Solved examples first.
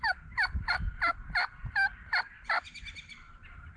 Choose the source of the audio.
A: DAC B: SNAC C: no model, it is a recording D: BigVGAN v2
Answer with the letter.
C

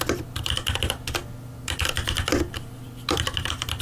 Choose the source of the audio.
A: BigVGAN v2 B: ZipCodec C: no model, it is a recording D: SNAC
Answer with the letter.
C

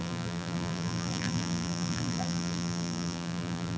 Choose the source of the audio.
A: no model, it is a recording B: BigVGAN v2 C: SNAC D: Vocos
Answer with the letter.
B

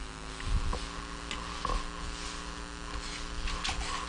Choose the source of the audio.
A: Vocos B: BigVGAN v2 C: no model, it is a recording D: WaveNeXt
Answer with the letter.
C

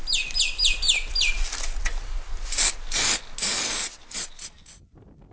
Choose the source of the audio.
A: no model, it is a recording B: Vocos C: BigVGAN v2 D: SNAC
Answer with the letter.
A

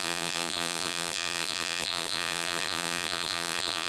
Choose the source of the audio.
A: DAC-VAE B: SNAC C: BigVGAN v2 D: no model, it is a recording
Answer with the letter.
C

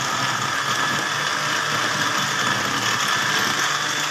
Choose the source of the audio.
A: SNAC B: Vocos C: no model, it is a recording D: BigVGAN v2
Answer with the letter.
C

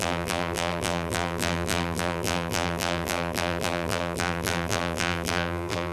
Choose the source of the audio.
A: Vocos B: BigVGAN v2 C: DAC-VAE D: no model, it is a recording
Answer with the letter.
B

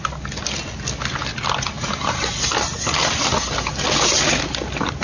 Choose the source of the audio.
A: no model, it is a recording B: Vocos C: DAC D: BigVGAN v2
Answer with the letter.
A